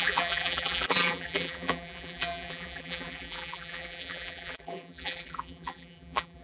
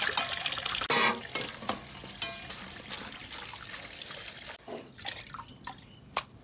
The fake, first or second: first